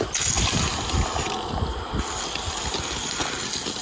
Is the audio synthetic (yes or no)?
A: no